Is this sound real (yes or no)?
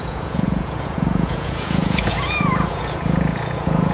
no